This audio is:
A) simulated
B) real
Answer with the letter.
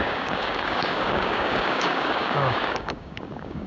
A